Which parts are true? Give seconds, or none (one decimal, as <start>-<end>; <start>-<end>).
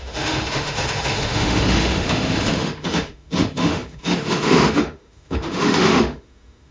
none